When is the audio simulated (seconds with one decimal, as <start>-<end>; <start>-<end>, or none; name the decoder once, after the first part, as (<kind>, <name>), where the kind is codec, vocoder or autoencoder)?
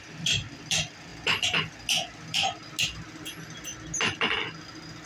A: 0.0-1.1 (vocoder, BigVGAN v2); 2.8-3.7; 4.3-5.1